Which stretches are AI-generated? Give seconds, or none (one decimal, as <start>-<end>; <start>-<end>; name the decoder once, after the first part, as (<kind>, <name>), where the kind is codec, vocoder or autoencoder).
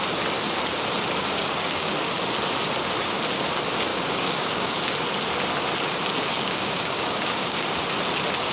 1.2-2.2 (codec, DAC); 3.9-4.7; 6.3-7.8